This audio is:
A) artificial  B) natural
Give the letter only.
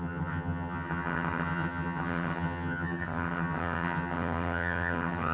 A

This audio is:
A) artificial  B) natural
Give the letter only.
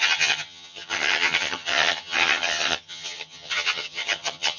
A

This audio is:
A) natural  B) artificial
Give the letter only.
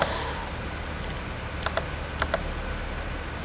A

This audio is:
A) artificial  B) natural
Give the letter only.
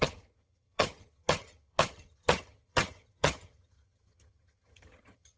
A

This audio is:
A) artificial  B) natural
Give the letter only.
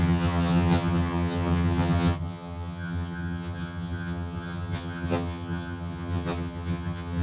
A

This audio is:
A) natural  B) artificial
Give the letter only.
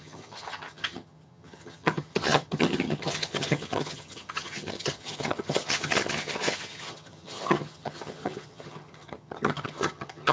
B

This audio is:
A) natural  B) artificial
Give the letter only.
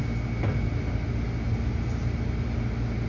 A